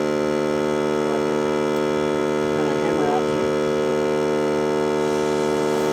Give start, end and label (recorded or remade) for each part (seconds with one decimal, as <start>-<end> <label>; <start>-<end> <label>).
0.0-5.9 recorded